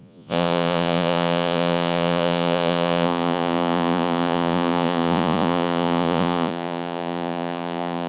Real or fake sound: fake